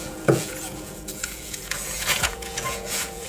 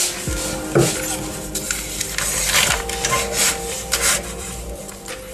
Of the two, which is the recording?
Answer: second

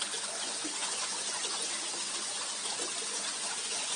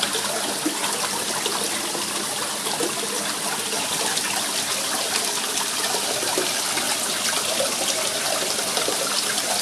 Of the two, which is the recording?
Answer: second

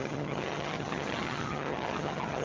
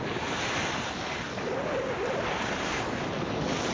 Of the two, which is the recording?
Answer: second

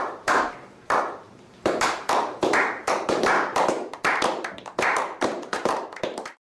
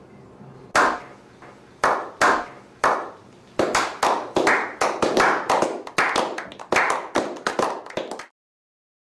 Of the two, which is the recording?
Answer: second